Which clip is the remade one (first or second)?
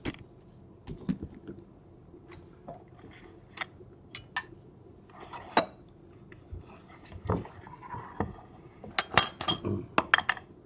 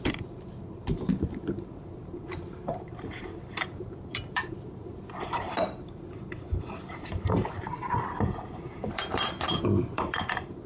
second